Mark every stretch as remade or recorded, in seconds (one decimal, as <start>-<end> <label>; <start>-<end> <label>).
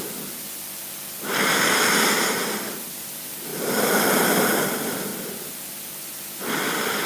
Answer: 0.0-3.5 remade; 3.5-4.6 recorded; 4.6-5.1 remade; 5.1-6.4 recorded; 6.4-7.1 remade